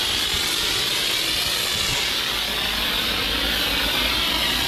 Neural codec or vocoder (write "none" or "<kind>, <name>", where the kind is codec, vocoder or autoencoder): none